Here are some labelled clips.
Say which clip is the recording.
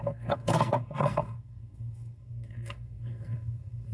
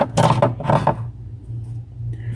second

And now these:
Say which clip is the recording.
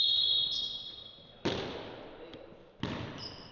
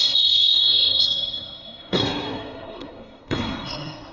first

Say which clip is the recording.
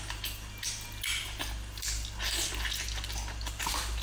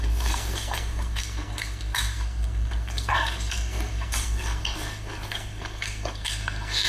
first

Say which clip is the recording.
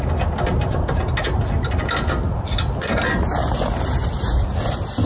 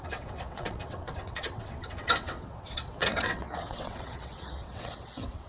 first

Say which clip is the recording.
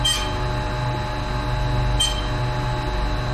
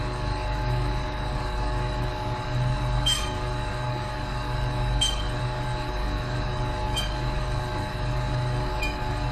first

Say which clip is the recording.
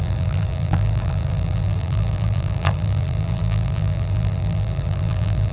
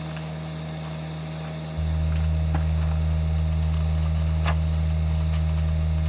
second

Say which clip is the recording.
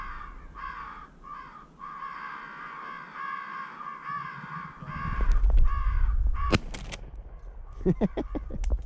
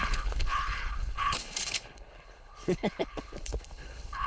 first